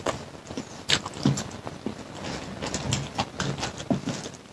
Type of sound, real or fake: real